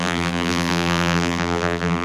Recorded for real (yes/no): no